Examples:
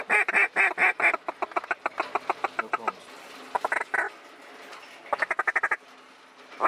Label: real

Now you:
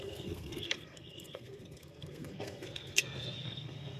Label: fake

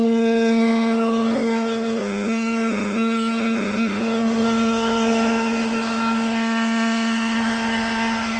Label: fake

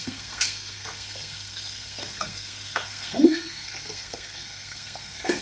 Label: fake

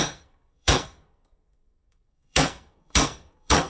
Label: fake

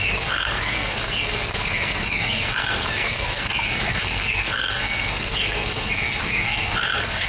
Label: fake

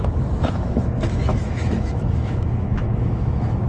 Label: fake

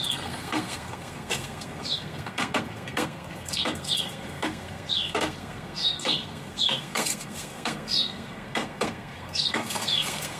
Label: fake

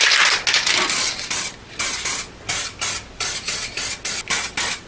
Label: real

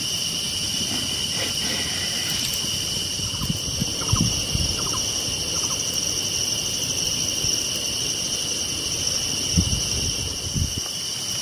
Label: real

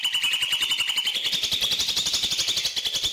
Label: real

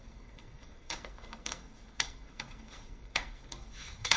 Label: fake